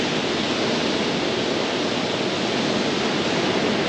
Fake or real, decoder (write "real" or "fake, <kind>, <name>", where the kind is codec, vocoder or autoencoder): real